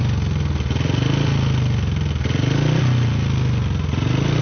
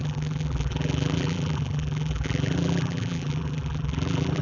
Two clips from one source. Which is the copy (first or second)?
second